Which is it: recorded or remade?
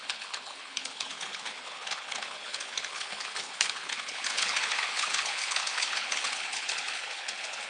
remade